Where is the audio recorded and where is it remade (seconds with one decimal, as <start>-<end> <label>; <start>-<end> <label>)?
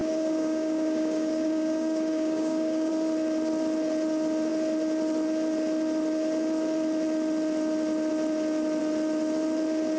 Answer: 0.0-2.9 remade; 2.9-10.0 recorded